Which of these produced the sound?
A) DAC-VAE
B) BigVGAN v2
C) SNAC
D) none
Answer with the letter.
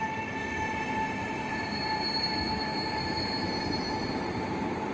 B